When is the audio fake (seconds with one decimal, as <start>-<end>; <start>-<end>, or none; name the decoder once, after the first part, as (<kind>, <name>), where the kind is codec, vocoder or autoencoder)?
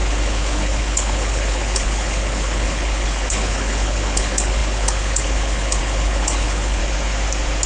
0.0-6.8 (codec, HILCodec)